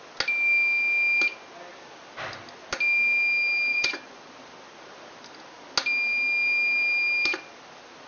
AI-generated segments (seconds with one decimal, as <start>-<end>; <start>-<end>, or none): 3.7-4.3